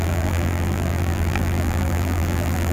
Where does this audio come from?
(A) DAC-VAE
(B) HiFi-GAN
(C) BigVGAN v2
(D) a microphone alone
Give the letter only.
C